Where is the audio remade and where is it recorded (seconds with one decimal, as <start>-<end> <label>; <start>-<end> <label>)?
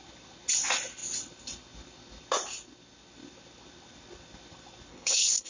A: 0.0-4.9 recorded; 4.9-5.5 remade